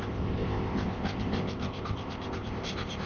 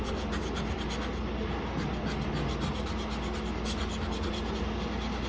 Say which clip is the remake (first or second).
first